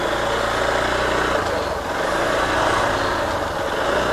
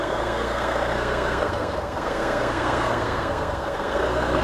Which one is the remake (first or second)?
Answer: second